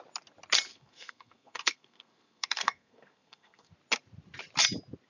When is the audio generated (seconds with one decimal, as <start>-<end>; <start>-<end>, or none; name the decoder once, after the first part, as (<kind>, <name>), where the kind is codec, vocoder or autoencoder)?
0.7-3.7 (codec, SNAC)